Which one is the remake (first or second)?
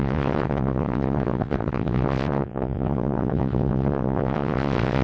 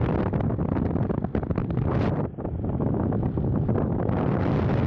first